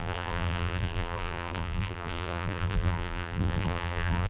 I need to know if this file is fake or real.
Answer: fake